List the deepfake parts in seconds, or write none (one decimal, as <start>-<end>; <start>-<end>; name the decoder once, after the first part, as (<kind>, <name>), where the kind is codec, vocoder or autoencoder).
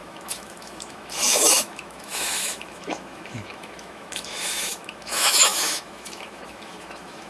0.0-7.3 (autoencoder, DAC-VAE)